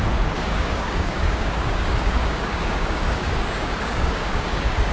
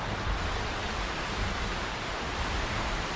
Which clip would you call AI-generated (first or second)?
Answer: first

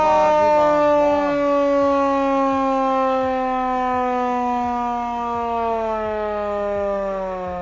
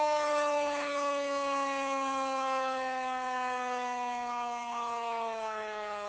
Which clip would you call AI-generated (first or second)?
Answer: second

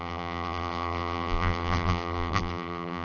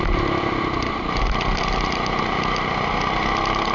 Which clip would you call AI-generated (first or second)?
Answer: first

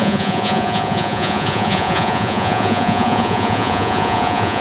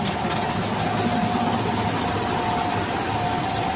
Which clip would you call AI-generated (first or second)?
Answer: first